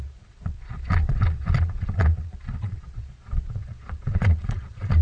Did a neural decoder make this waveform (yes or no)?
yes